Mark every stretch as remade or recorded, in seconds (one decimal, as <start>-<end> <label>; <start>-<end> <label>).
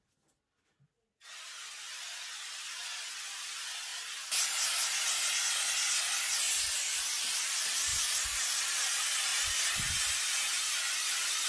0.0-11.5 recorded